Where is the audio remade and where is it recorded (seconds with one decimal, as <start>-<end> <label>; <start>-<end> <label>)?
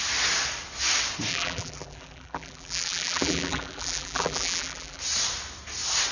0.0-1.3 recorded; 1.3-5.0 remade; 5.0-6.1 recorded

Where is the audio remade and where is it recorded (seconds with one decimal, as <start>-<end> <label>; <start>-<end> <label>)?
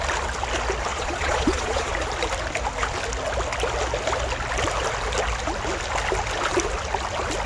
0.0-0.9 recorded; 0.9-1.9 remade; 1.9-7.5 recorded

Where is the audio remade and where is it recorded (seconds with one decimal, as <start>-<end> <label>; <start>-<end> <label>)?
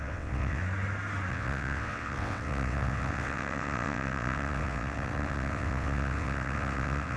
0.0-0.6 remade; 0.6-1.3 recorded; 1.3-7.2 remade